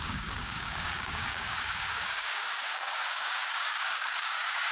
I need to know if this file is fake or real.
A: fake